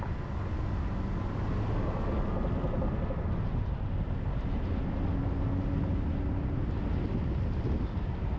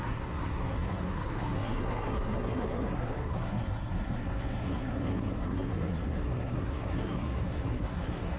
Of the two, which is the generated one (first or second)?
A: second